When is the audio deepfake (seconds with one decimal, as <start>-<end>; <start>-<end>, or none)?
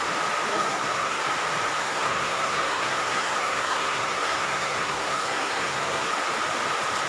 0.5-1.2; 1.8-6.1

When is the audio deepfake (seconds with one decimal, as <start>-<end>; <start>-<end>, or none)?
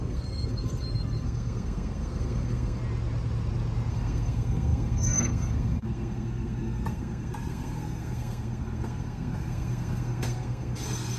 0.0-2.8; 3.9-11.2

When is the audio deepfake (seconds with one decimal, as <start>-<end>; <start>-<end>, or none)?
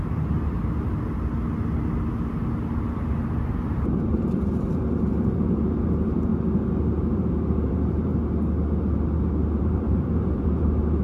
0.0-0.6; 3.4-6.3; 7.0-8.1; 9.6-11.0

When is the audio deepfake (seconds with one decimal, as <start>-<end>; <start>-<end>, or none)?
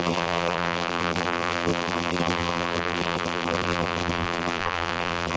0.0-5.4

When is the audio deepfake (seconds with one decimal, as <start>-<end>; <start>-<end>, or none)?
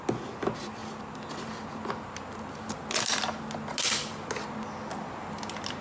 none